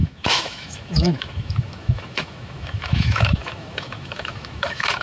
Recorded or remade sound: remade